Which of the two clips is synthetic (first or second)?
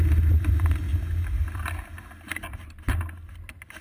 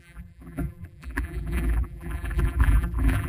second